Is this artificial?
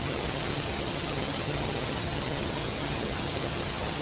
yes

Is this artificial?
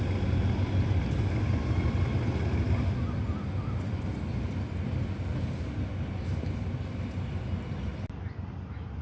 no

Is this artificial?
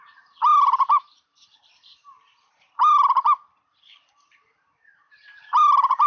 yes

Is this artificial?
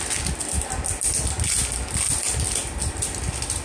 no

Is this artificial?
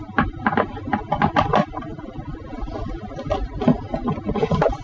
no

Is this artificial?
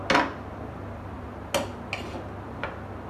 no